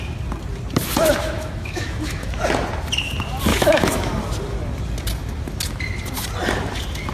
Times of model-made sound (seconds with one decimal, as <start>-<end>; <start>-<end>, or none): 1.2-2.4; 3.5-4.1